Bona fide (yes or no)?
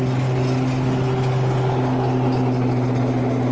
yes